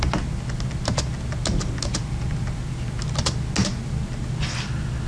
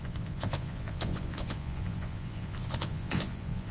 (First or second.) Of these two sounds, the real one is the first